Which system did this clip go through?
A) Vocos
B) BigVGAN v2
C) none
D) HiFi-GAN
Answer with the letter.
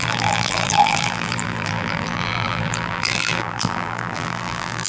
B